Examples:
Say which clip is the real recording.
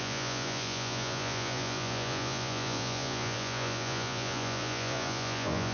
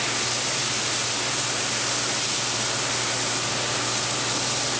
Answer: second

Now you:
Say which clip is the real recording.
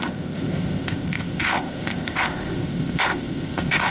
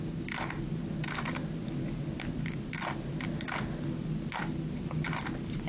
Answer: second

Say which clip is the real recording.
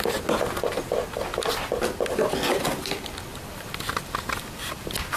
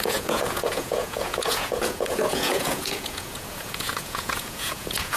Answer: first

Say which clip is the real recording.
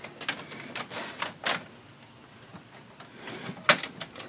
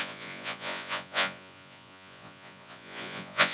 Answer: first